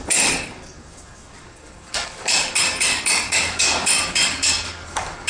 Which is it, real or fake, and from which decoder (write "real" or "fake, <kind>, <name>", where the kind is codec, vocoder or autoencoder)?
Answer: fake, codec, DAC